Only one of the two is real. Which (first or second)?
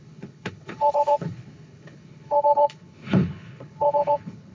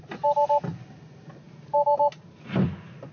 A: second